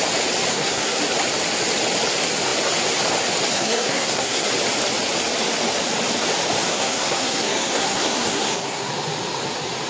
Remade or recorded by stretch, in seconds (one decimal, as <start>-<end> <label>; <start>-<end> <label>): 0.0-0.5 recorded; 0.5-1.0 remade; 1.0-3.5 recorded; 3.5-4.5 remade; 4.5-6.7 recorded; 6.7-8.9 remade; 8.9-9.9 recorded